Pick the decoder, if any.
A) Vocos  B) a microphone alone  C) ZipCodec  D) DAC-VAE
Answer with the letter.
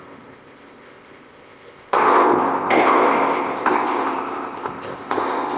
C